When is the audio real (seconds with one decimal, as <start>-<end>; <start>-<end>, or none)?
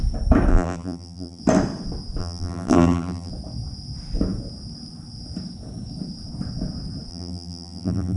0.0-0.5; 1.4-2.2; 3.3-7.1